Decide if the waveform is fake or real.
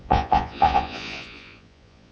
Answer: fake